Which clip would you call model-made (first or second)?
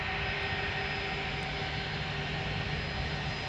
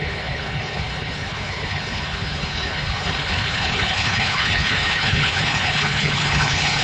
second